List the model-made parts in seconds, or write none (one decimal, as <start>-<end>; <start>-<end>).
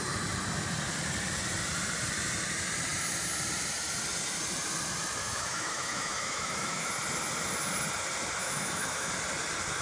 5.2-6.9; 8.4-9.1